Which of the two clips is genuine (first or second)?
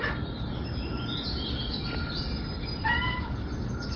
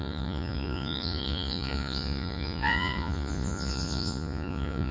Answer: first